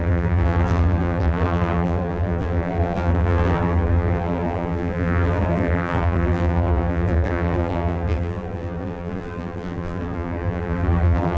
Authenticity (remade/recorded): remade